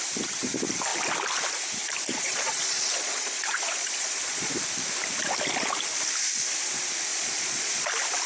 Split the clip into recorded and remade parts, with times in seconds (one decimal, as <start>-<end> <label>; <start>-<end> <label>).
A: 0.0-2.1 recorded; 2.1-4.5 remade; 4.5-7.1 recorded; 7.1-7.9 remade; 7.9-8.3 recorded